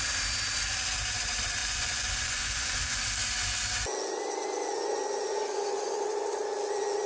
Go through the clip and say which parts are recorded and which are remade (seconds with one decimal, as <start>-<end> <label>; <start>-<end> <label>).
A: 0.0-1.6 recorded; 1.6-3.0 remade; 3.0-4.7 recorded; 4.7-6.4 remade; 6.4-7.1 recorded